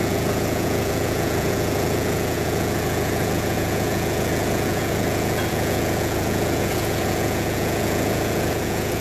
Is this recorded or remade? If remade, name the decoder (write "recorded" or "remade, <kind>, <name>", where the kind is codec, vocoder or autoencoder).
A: remade, vocoder, Vocos